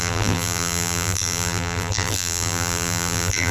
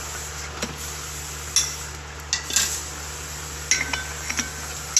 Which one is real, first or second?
second